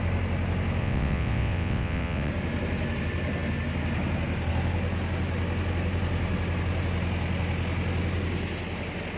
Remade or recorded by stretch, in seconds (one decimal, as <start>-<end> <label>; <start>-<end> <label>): 0.0-0.8 recorded; 0.8-2.3 remade; 2.3-9.2 recorded